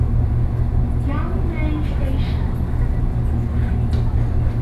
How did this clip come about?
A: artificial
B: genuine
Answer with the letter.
B